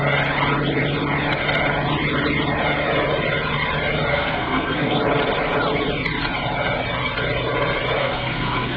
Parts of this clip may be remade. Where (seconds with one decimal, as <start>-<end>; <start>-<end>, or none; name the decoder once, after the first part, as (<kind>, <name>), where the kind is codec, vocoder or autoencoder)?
4.1-5.0 (codec, SNAC); 8.0-8.8